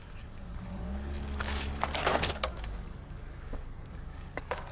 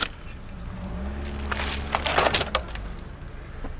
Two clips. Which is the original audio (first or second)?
second